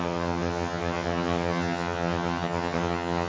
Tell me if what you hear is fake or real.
fake